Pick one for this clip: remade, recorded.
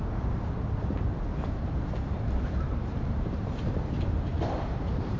remade